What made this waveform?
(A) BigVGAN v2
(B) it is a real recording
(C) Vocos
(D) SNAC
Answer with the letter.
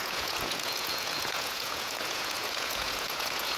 C